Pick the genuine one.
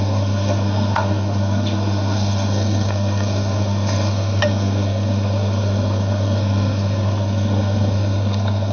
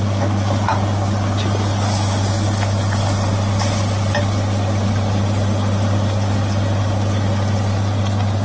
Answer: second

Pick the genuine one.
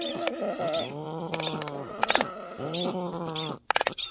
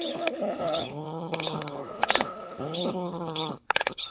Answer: first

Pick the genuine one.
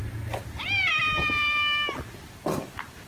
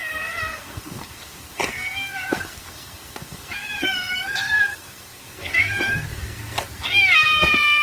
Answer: first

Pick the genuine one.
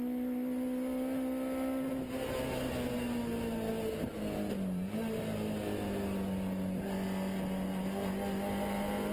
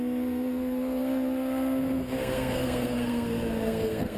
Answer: first